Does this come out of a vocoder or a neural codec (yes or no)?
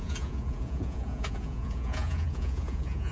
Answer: yes